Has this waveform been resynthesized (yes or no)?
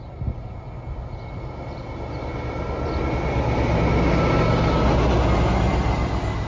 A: no